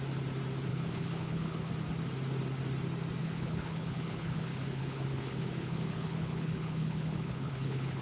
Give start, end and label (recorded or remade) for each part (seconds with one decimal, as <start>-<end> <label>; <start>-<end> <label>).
0.0-0.7 recorded; 0.7-1.7 remade; 1.7-3.2 recorded; 3.2-8.0 remade